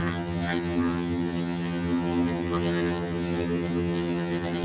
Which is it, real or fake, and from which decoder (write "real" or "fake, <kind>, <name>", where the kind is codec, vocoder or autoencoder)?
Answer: fake, vocoder, HiFi-GAN